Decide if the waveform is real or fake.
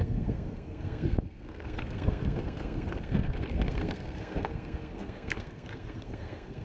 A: fake